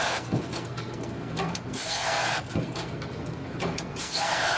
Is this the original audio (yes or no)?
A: no